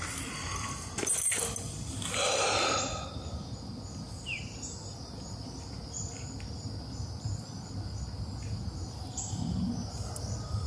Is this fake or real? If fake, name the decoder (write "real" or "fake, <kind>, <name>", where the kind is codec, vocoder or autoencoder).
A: real